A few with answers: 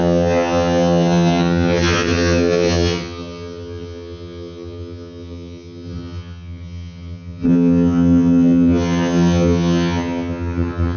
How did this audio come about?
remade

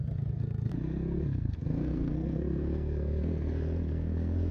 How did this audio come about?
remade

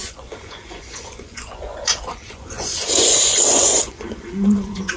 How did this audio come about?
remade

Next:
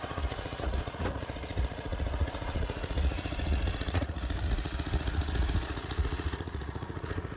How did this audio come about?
remade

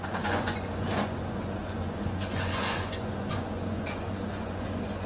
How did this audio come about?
remade